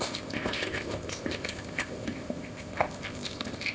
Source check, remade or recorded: remade